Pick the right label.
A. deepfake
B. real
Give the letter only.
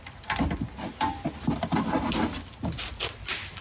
B